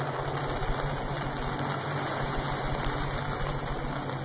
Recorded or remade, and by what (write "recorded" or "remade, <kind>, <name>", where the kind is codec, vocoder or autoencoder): recorded